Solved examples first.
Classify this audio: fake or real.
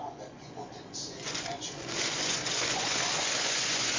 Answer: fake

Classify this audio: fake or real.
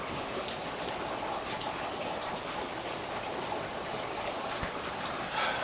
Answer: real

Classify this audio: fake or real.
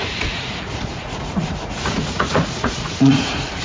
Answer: fake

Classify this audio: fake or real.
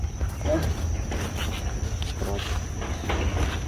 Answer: real